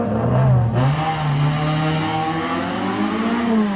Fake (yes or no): no